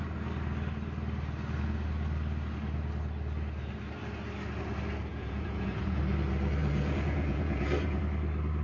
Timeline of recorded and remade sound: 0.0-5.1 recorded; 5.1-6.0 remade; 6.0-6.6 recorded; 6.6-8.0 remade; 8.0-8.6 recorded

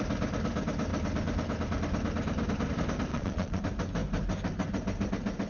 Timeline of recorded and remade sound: 0.0-3.1 recorded; 3.1-3.6 remade; 3.6-5.5 recorded

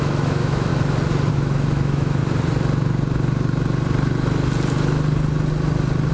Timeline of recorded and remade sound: 0.0-0.7 remade; 0.7-1.3 recorded; 1.3-2.2 remade; 2.2-6.1 recorded

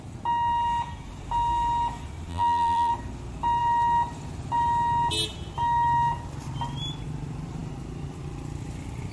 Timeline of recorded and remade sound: 0.0-2.3 recorded; 2.3-2.9 remade; 2.9-9.1 recorded

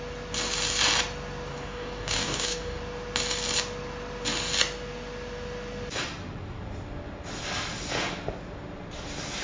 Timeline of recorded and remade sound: 0.0-1.5 recorded; 1.5-2.8 remade; 2.8-9.4 recorded

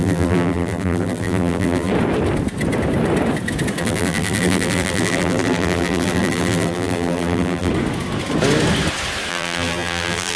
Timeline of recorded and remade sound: 0.0-1.9 remade; 1.9-3.8 recorded; 3.8-7.7 remade; 7.7-9.3 recorded; 9.3-10.4 remade